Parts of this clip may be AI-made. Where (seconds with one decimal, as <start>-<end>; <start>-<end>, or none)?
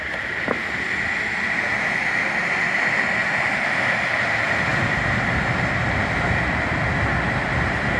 none